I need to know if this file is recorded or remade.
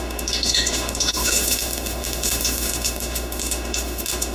remade